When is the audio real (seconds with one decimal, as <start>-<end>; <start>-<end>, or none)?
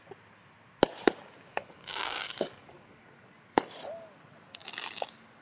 0.0-1.5; 3.0-5.4